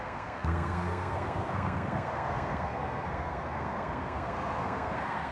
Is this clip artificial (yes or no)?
yes